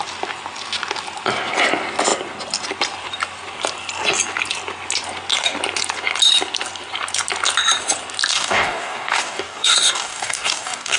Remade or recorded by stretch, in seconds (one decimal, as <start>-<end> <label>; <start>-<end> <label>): 0.0-8.3 recorded; 8.3-11.0 remade